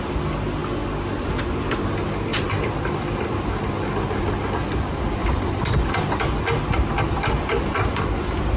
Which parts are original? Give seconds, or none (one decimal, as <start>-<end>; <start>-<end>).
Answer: 0.0-5.2; 6.2-8.6